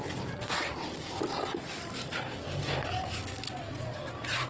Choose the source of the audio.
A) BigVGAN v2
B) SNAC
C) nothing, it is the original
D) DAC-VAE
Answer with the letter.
C